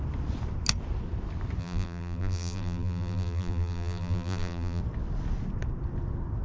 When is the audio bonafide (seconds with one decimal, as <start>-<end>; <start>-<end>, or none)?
0.0-1.6; 4.8-6.4